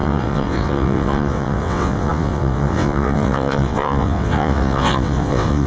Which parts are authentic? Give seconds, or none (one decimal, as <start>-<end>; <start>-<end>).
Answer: none